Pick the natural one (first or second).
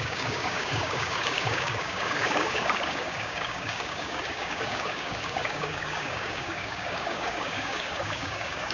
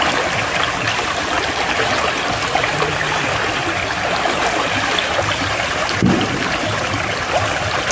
second